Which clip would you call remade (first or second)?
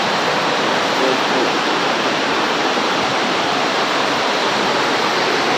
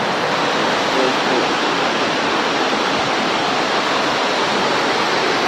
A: first